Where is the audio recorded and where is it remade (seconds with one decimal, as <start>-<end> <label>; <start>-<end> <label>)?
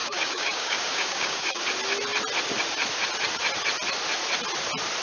0.0-1.6 remade; 1.6-5.0 recorded